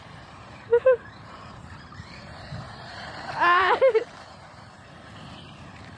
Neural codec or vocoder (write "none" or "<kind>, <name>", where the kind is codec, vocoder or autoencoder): vocoder, BigVGAN v2